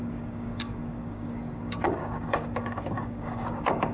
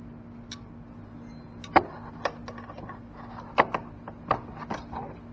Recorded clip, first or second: second